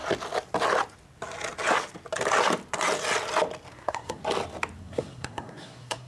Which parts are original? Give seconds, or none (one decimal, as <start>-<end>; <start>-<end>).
0.0-3.7; 4.2-4.8